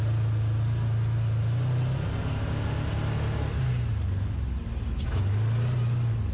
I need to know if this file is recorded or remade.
recorded